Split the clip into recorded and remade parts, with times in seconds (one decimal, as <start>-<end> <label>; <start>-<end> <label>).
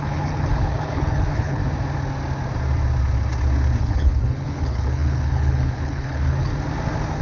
0.0-1.6 remade; 1.6-3.8 recorded; 3.8-6.5 remade; 6.5-7.2 recorded